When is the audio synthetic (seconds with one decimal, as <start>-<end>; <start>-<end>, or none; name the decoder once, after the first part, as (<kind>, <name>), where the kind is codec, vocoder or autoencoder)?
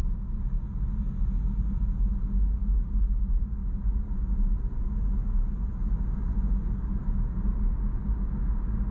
none